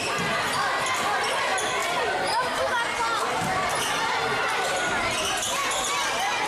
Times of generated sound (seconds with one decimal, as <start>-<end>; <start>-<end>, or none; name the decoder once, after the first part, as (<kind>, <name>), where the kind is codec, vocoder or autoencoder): none